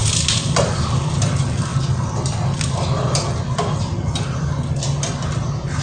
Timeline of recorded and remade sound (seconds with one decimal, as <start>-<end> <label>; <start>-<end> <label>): 0.0-1.1 remade; 1.1-1.7 recorded; 1.7-3.8 remade; 3.8-5.8 recorded